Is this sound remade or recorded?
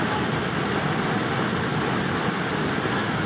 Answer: recorded